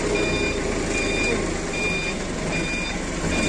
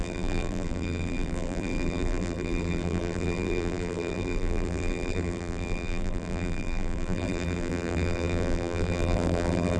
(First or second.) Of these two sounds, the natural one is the first